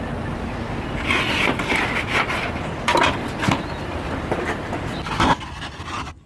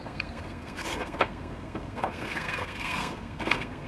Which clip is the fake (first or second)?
second